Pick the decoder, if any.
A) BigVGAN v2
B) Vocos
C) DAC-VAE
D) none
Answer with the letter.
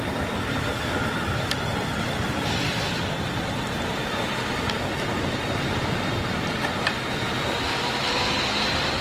D